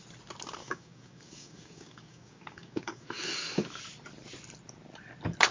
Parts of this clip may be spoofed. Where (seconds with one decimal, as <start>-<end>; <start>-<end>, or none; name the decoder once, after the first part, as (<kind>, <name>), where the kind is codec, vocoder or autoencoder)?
0.6-3.8 (codec, DAC)